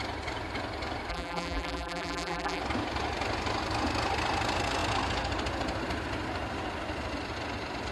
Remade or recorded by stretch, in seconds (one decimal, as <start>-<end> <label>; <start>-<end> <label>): 0.0-1.1 recorded; 1.1-2.6 remade; 2.6-7.9 recorded